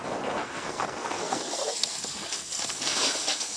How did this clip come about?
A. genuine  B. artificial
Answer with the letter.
B